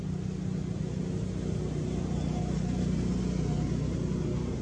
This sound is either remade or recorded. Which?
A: recorded